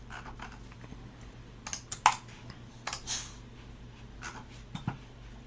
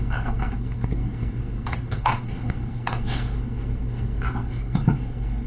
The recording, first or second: first